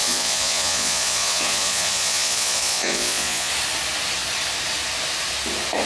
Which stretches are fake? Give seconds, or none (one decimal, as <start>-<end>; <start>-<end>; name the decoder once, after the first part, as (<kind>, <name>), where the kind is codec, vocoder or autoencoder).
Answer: 0.0-3.5 (vocoder, Vocos)